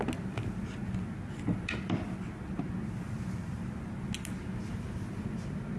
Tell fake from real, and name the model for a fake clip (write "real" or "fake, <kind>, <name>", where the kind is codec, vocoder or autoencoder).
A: real